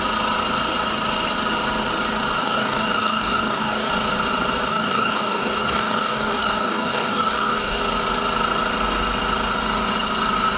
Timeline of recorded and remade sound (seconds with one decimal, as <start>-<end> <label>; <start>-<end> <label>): 0.0-2.4 recorded; 2.4-3.9 remade; 3.9-4.7 recorded; 4.7-7.8 remade; 7.8-10.6 recorded